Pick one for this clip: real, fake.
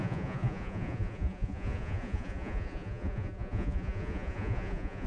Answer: fake